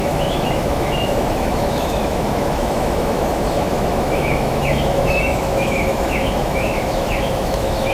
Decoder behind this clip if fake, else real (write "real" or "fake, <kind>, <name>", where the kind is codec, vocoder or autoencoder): fake, autoencoder, DAC-VAE